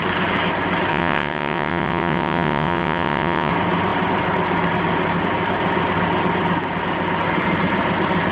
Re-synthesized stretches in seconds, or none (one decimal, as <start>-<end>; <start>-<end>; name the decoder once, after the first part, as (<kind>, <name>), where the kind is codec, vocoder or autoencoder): 0.9-3.5 (vocoder, WaveNeXt)